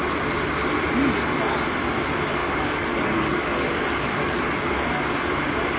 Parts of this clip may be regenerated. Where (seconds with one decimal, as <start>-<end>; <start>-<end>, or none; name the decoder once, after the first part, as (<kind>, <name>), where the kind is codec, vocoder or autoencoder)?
2.4-4.7 (codec, DAC)